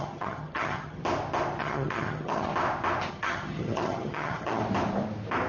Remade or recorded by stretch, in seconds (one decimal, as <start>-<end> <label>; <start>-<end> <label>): 0.0-1.0 remade; 1.0-1.6 recorded; 1.6-2.5 remade; 2.5-3.1 recorded; 3.1-4.6 remade; 4.6-5.5 recorded